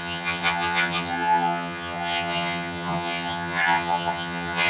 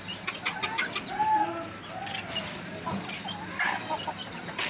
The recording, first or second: second